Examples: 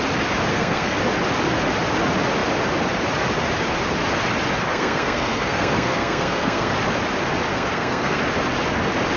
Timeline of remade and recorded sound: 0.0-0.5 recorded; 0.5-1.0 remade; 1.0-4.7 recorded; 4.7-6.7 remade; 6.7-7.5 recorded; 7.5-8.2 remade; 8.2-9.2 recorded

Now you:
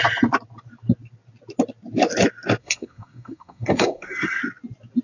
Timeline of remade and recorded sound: 0.0-2.6 recorded; 2.6-4.4 remade; 4.4-5.0 recorded

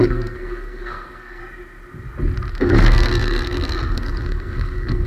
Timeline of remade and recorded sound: 0.0-1.4 remade; 1.4-2.5 recorded; 2.5-5.1 remade

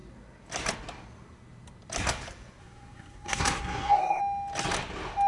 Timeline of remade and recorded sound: 0.0-2.6 recorded; 2.6-4.2 remade; 4.2-5.3 recorded

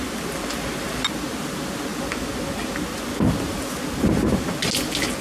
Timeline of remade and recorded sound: 0.0-5.2 recorded

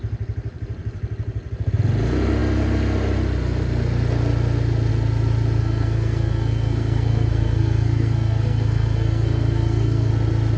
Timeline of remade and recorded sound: 0.0-5.6 recorded; 5.6-10.1 remade; 10.1-10.6 recorded

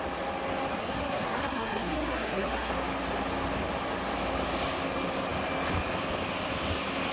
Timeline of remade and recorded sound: 0.0-0.8 recorded; 0.8-2.7 remade; 2.7-7.1 recorded

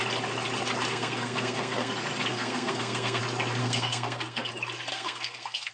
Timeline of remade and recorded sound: 0.0-0.9 recorded; 0.9-1.9 remade; 1.9-2.3 recorded; 2.3-3.2 remade; 3.2-3.6 recorded; 3.6-4.5 remade; 4.5-4.9 recorded; 4.9-5.7 remade